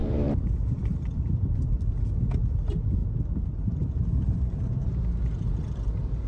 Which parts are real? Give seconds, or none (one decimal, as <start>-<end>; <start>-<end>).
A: 1.8-3.0; 5.2-6.3